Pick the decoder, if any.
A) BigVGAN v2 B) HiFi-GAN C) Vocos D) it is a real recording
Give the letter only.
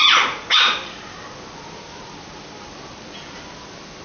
D